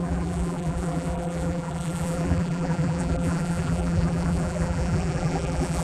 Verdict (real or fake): fake